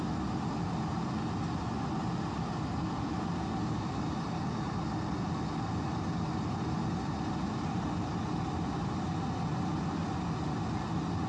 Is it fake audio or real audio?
real